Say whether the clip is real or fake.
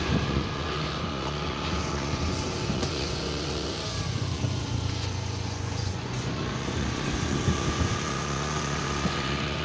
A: fake